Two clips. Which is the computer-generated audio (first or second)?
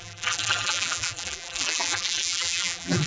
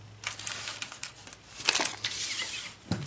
first